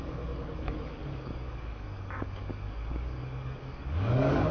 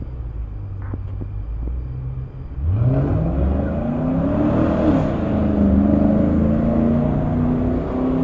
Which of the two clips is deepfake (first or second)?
first